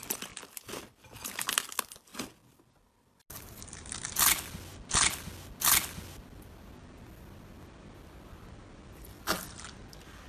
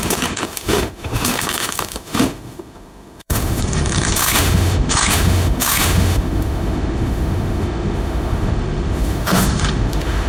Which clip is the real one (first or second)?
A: first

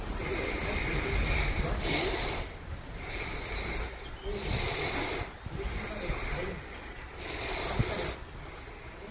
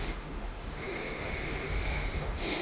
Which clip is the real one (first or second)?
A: first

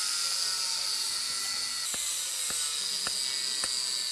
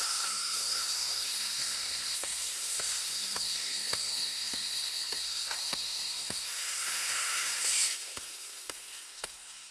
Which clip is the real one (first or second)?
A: first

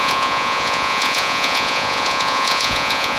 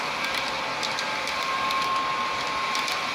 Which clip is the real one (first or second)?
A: second